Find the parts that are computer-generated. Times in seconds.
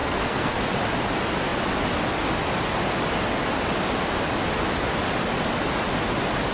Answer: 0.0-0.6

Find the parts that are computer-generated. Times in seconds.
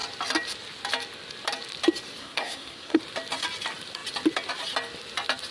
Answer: 2.2-3.0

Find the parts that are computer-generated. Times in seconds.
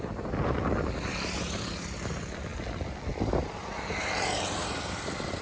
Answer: none